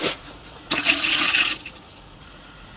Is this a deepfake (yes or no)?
yes